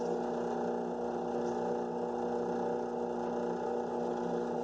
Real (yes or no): yes